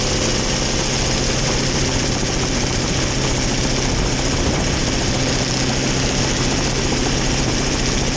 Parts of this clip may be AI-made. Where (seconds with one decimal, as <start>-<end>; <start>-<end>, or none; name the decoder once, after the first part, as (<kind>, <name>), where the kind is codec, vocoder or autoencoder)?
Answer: none